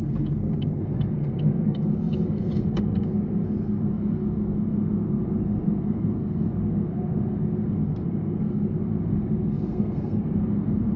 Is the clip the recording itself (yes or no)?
no